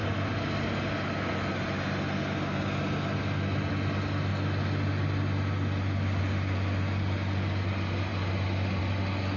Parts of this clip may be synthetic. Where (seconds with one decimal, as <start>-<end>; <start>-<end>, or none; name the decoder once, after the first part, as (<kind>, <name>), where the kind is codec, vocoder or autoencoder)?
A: none

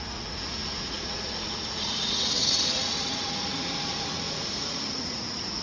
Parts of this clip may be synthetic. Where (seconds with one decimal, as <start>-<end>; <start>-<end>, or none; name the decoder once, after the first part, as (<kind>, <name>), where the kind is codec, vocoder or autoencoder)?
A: 0.0-5.6 (vocoder, Vocos)

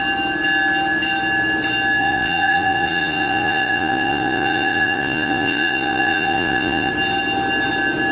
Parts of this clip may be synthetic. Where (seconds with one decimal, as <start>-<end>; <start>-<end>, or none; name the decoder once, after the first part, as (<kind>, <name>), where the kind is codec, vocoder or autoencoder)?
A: 2.0-6.9 (vocoder, Vocos)

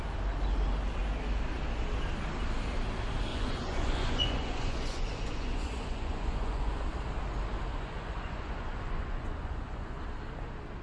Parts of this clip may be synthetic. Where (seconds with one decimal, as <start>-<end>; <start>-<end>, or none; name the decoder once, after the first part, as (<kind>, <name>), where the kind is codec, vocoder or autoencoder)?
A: 3.3-6.8 (vocoder, Vocos); 7.7-10.0

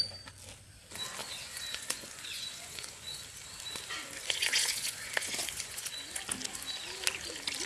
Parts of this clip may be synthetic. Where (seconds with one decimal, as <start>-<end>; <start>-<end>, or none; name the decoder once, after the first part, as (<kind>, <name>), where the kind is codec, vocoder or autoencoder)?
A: 1.2-3.2 (vocoder, Vocos); 4.2-6.2